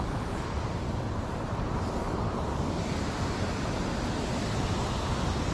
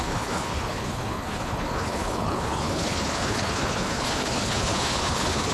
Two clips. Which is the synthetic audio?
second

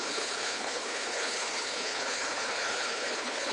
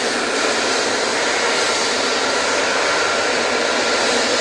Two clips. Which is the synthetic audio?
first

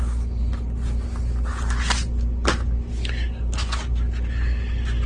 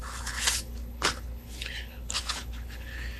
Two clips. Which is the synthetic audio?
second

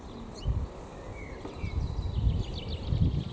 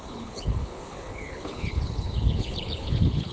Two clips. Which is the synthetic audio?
second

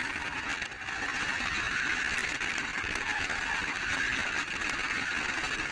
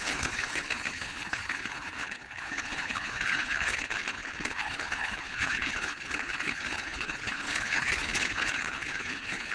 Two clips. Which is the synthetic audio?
second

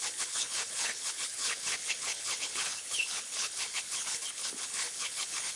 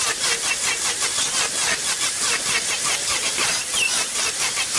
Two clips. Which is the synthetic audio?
first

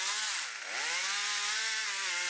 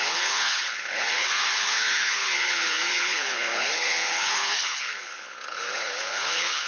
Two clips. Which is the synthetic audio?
second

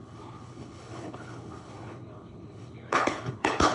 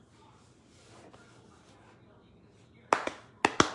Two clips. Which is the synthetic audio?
first